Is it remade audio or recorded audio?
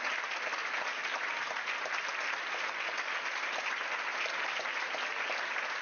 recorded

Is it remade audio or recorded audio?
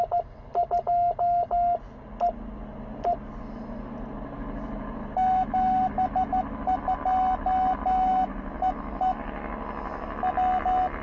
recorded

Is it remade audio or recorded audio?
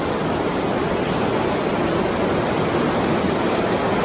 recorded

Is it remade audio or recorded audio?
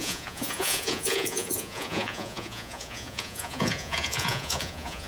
remade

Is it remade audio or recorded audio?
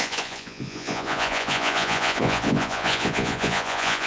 remade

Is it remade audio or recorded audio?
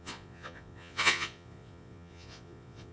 remade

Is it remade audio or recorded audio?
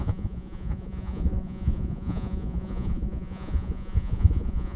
remade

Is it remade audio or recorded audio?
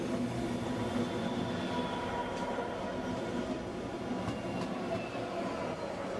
recorded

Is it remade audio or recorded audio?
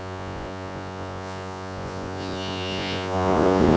remade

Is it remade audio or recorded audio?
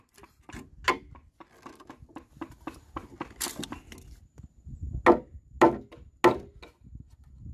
recorded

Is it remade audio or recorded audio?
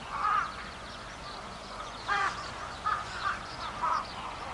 remade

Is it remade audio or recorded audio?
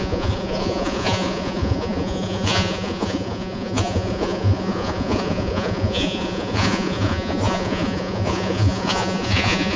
remade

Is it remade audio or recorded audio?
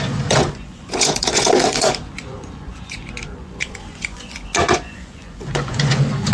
remade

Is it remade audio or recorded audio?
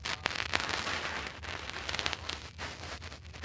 recorded